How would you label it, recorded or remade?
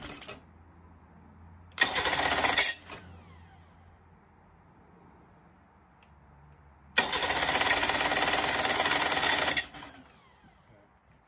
recorded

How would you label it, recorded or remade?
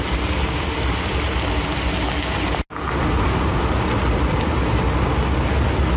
recorded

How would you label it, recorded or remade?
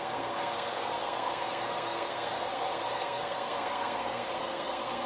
remade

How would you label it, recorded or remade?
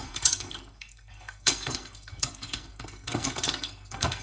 remade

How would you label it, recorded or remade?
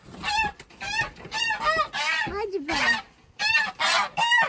recorded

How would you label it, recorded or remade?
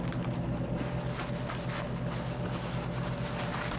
recorded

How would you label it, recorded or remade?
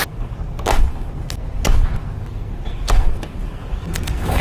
remade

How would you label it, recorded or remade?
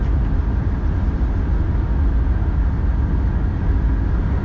recorded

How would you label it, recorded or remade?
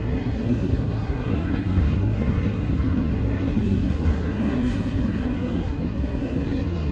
remade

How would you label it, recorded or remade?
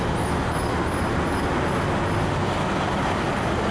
recorded